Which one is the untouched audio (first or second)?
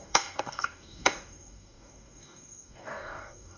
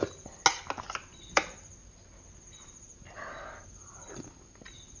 second